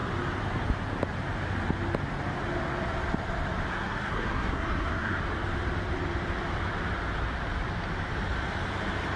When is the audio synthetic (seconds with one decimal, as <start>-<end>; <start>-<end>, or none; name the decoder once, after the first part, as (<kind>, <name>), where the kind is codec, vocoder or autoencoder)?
3.7-5.2 (codec, SNAC)